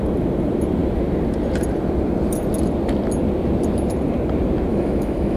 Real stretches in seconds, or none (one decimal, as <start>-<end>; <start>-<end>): 0.0-4.7